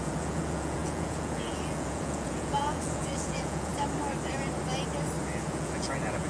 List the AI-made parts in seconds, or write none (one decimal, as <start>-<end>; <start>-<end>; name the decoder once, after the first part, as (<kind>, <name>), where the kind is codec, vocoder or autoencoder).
0.0-3.7 (vocoder, Vocos); 5.4-6.3